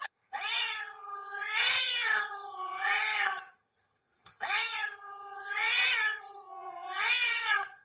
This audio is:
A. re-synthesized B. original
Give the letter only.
A